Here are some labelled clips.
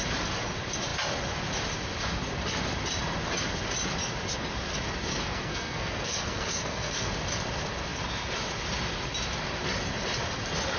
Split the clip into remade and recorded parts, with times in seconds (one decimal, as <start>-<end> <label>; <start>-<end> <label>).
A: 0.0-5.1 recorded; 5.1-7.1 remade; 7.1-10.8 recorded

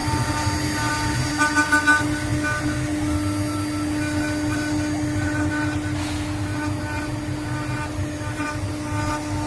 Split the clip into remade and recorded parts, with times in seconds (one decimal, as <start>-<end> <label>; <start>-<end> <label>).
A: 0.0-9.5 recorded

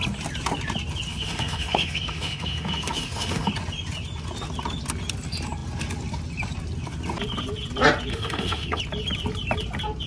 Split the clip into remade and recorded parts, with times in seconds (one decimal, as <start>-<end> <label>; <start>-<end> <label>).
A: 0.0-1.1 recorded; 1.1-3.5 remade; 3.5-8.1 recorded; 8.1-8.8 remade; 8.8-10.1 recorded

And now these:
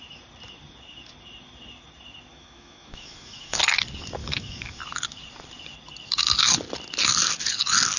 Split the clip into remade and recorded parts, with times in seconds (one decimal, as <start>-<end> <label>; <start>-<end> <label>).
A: 0.0-2.3 recorded; 2.3-3.6 remade; 3.6-4.2 recorded; 4.2-4.8 remade; 4.8-8.0 recorded